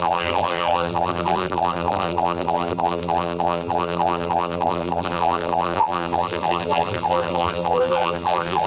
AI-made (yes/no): yes